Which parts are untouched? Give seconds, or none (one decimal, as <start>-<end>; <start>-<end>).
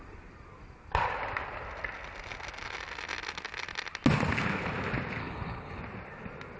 0.0-5.2; 5.8-6.6